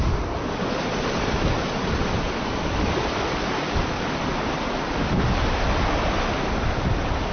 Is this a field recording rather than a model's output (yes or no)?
yes